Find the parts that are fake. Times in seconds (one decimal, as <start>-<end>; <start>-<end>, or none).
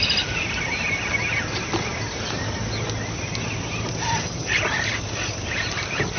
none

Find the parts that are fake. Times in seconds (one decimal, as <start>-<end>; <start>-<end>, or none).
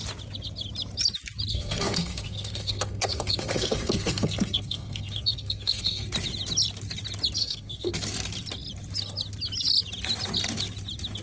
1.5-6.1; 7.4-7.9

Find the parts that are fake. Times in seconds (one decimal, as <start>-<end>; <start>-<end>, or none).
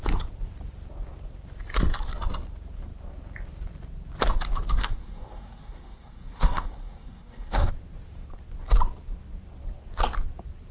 4.8-7.7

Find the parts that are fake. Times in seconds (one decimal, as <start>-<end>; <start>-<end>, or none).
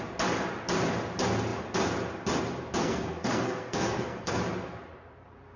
2.8-4.4